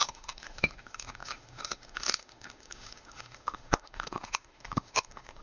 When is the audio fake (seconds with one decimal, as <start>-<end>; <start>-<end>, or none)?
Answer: 0.0-5.4